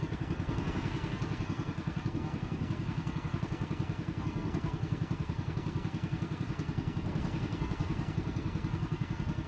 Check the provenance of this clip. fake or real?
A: fake